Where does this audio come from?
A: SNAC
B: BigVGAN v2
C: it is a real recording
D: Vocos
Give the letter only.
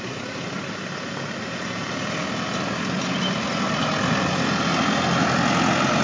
C